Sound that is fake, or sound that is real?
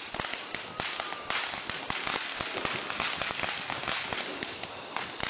real